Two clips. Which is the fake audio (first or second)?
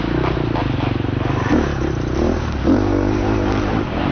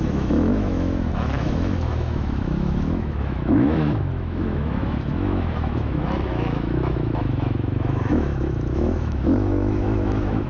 second